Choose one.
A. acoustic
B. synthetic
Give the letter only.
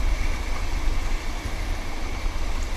A